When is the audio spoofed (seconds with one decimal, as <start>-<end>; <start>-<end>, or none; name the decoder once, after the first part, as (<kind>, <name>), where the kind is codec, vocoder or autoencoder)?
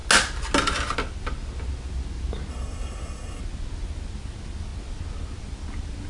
2.5-3.4 (codec, SNAC)